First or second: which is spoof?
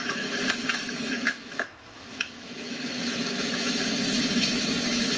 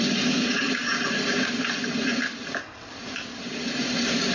first